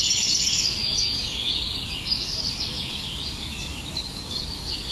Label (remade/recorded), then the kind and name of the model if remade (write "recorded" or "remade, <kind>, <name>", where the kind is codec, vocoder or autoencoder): remade, codec, DAC